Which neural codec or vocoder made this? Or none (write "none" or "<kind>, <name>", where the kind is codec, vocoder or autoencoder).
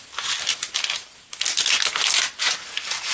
none